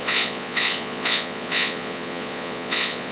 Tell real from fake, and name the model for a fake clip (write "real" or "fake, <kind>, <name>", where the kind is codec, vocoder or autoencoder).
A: fake, vocoder, Vocos